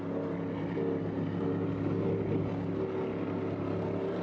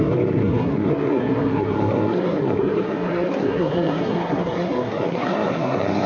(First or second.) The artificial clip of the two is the second